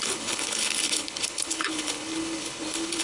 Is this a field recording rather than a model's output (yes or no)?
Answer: no